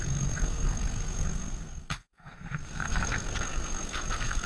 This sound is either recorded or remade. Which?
remade